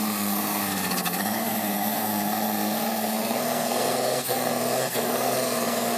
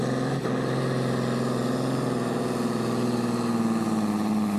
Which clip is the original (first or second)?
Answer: second